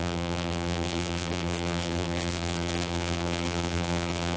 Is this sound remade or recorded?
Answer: remade